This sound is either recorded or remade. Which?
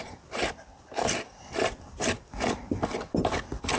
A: recorded